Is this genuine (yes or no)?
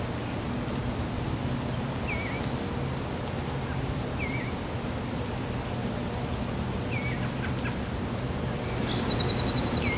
yes